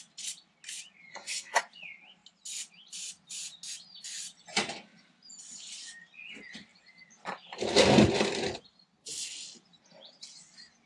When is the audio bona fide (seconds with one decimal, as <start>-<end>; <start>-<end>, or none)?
0.0-1.1; 1.6-10.9